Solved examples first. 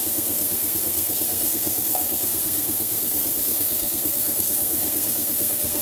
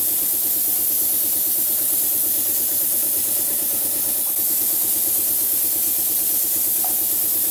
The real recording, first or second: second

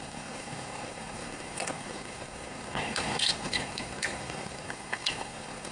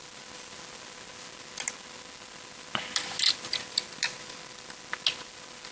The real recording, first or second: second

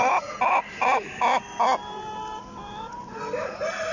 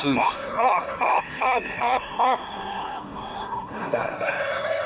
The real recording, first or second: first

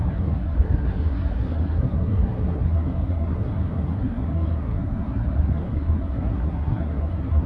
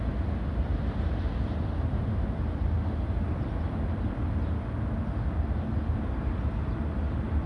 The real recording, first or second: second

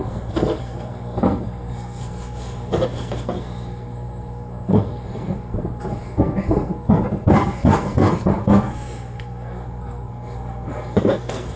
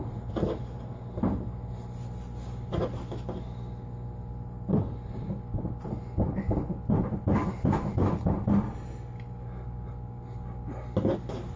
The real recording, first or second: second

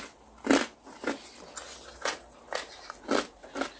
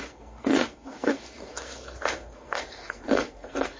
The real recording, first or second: first